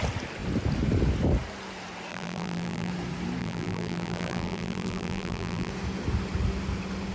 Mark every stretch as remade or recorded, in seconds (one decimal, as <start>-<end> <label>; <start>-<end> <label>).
0.0-2.1 recorded; 2.1-2.9 remade; 2.9-3.4 recorded; 3.4-5.7 remade; 5.7-7.1 recorded